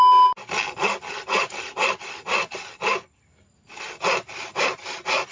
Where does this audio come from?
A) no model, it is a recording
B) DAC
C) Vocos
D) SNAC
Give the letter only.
A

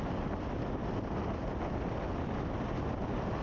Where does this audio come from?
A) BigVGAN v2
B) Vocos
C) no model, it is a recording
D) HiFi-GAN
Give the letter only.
C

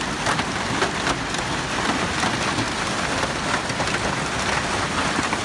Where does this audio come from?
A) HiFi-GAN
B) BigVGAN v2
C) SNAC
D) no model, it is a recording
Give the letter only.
D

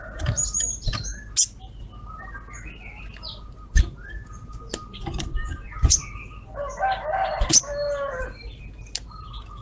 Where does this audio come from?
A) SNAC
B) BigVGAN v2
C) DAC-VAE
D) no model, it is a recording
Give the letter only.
D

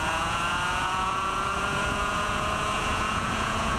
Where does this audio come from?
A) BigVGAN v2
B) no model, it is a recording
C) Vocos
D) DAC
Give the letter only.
C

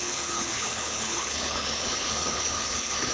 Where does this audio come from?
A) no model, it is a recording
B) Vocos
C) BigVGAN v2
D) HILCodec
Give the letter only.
D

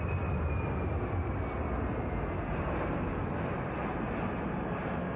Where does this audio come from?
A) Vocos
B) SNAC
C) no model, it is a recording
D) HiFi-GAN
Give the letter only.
C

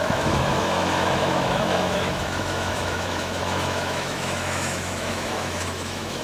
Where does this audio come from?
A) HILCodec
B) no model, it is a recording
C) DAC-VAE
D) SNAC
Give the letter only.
C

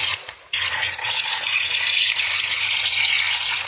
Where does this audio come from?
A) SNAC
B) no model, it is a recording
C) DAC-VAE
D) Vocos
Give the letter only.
D